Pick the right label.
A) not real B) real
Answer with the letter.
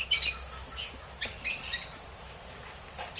B